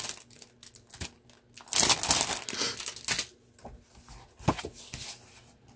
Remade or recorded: recorded